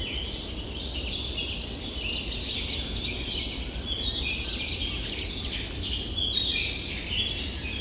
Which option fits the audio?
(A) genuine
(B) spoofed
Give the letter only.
A